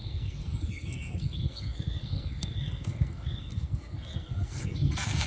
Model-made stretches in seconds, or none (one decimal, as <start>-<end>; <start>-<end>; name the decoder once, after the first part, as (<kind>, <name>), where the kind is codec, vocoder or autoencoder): 0.0-5.3 (codec, SNAC)